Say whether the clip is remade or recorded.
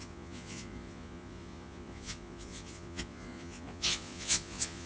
remade